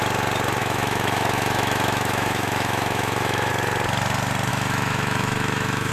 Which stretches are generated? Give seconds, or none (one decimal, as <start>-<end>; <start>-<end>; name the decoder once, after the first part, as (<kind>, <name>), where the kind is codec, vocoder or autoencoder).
0.6-3.5 (autoencoder, DAC-VAE); 4.5-5.9